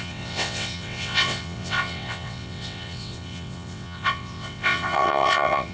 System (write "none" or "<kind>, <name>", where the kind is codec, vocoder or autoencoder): vocoder, WaveNeXt